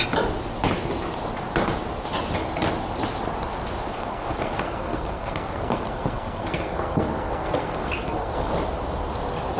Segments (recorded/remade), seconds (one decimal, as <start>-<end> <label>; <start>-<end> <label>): 0.0-3.9 recorded; 3.9-8.5 remade; 8.5-9.6 recorded